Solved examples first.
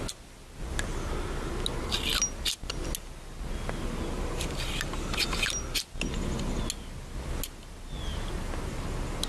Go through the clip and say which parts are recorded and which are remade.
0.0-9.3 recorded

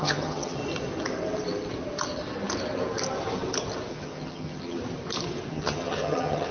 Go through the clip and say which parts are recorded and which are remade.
0.0-0.6 remade; 0.6-3.9 recorded; 3.9-4.8 remade; 4.8-5.5 recorded; 5.5-6.5 remade

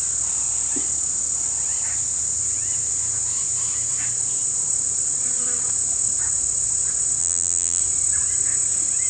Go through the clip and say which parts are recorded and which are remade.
0.0-7.2 recorded; 7.2-7.8 remade; 7.8-9.1 recorded